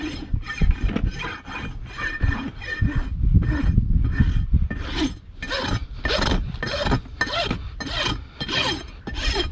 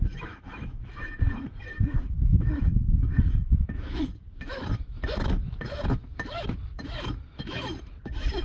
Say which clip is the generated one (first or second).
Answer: second